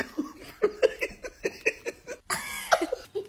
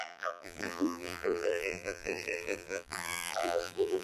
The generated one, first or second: second